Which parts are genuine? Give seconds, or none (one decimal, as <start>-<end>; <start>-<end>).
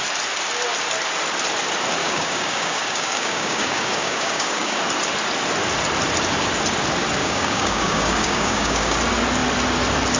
0.0-2.0; 4.8-7.2; 9.0-10.2